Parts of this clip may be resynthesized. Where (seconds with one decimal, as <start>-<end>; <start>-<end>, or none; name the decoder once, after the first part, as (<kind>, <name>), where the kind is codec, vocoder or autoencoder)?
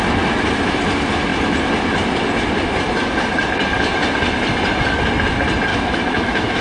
5.7-6.6 (autoencoder, DAC-VAE)